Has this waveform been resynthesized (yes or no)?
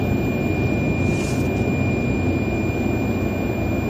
no